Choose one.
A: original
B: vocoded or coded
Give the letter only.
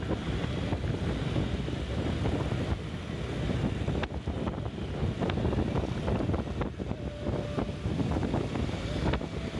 A